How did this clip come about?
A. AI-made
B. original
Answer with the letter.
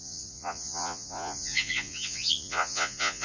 A